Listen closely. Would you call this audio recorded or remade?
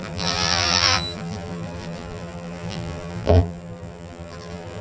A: remade